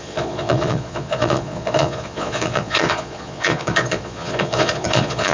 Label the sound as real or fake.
fake